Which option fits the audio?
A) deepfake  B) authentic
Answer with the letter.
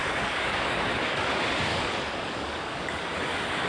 A